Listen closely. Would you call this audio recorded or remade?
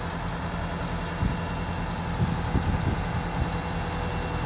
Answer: recorded